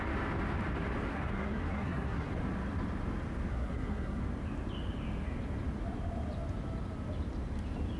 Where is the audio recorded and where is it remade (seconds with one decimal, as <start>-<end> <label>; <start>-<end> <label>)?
0.0-1.1 recorded; 1.1-2.3 remade; 2.3-3.5 recorded; 3.5-4.2 remade; 4.2-8.0 recorded